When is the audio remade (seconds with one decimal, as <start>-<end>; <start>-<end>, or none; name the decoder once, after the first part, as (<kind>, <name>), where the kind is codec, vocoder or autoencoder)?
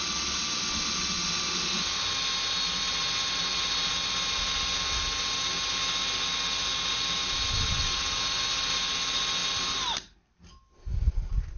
none